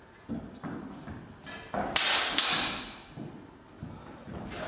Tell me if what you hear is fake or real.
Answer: real